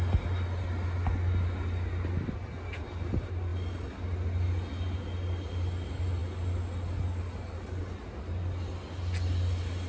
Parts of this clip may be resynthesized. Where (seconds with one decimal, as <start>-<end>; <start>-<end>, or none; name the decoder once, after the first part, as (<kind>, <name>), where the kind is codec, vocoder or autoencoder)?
none